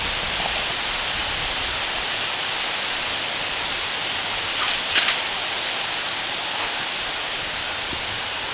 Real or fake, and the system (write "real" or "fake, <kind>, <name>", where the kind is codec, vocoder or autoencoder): real